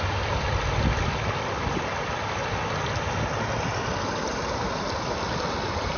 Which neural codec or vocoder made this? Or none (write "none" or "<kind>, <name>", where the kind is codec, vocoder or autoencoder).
none